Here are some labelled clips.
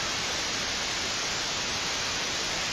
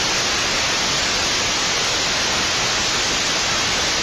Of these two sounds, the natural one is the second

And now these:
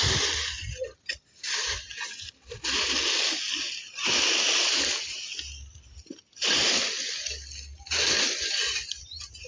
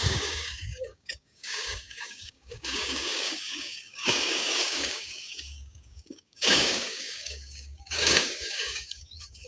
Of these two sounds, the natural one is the first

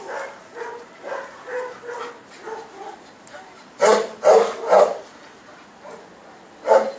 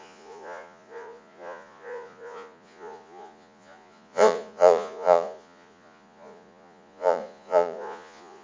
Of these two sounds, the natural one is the first